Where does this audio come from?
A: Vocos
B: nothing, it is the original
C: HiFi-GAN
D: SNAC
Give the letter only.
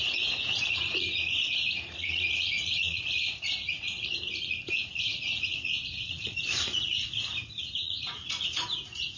A